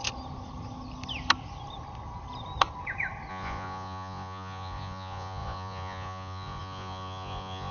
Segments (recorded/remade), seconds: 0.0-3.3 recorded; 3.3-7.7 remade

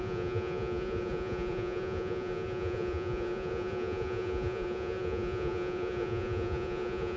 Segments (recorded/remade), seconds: 0.0-7.2 remade

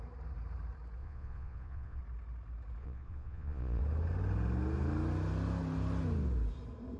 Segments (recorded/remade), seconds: 0.0-1.0 recorded; 1.0-2.0 remade; 2.0-2.8 recorded; 2.8-3.8 remade; 3.8-7.0 recorded

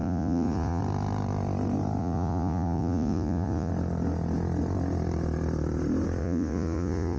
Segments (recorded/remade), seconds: 0.0-0.8 remade; 0.8-2.0 recorded; 2.0-3.7 remade; 3.7-6.2 recorded; 6.2-7.2 remade

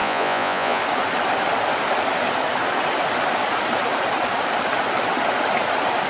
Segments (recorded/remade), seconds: 0.0-0.8 remade; 0.8-6.1 recorded